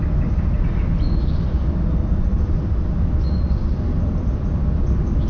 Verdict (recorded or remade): recorded